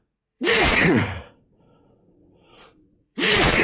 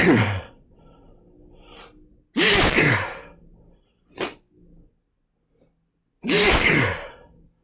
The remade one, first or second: first